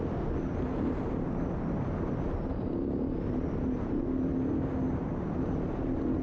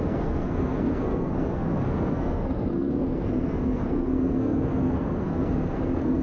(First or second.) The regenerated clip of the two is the second